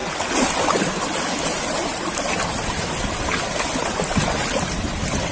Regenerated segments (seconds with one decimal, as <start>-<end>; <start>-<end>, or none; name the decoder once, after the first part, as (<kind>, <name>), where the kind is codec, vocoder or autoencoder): none

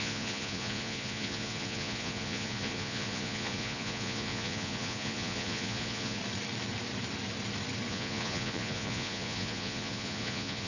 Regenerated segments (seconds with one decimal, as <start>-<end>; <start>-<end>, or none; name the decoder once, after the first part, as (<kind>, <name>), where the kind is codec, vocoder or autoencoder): 0.0-6.2 (vocoder, Vocos); 7.9-10.7

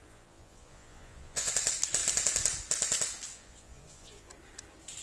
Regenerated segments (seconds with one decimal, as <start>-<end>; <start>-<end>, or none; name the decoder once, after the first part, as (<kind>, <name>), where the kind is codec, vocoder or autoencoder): 0.0-1.5 (vocoder, Vocos); 3.3-4.3

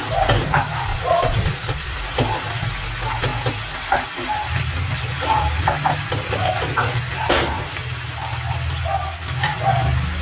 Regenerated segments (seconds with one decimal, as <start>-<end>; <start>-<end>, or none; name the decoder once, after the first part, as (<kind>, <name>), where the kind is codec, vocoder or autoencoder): 0.9-1.9 (vocoder, Vocos)

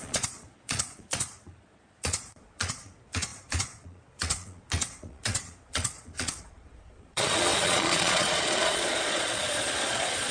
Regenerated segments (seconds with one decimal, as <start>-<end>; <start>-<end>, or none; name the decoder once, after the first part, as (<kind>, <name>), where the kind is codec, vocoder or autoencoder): 0.0-10.3 (vocoder, Vocos)

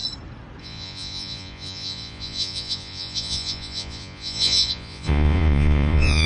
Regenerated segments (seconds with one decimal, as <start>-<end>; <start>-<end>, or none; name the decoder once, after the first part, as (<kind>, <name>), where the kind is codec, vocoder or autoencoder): 0.6-6.3 (vocoder, Vocos)